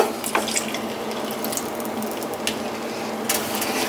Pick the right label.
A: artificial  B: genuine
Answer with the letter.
B